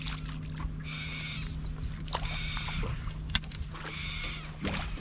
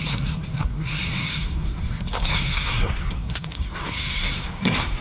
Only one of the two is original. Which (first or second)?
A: first